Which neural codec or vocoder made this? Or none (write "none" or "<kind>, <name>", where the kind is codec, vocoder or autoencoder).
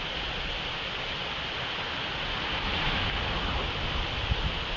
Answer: none